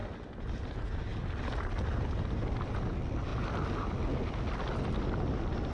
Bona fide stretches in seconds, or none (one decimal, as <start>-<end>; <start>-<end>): 0.0-5.7